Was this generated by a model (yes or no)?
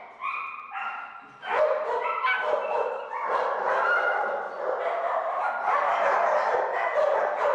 no